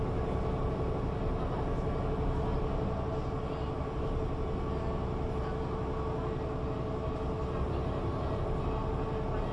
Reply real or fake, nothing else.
real